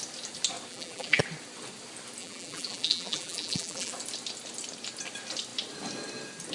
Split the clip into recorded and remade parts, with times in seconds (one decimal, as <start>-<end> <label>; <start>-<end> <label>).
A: 0.0-0.7 recorded; 0.7-1.2 remade; 1.2-2.2 recorded; 2.2-3.9 remade; 3.9-6.5 recorded